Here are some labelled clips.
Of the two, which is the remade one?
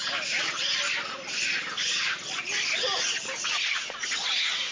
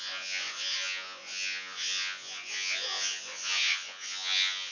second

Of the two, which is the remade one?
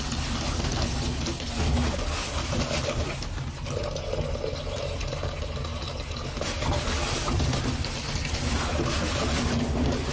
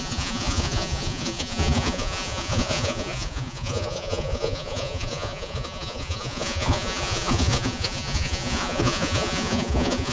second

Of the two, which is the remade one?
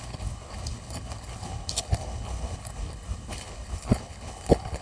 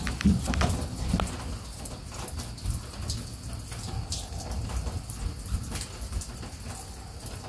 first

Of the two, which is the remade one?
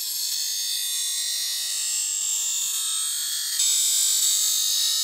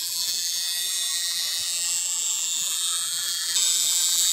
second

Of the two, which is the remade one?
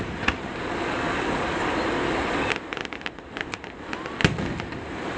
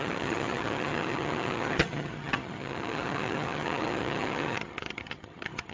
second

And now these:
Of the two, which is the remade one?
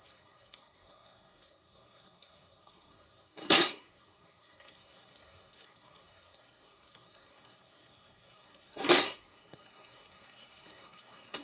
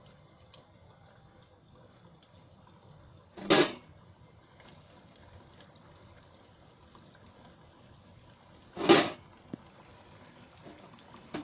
first